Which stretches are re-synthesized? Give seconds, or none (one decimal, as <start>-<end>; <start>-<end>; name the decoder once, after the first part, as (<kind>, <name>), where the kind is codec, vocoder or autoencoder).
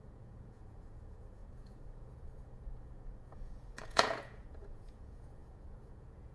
0.0-6.3 (vocoder, Vocos)